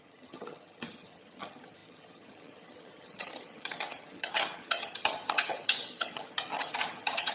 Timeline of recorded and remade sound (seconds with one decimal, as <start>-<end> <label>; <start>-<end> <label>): 0.0-7.3 remade